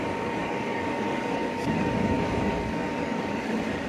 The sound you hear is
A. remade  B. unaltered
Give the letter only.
A